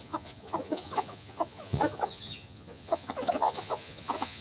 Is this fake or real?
fake